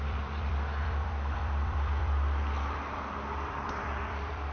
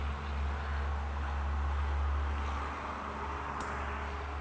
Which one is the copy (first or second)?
first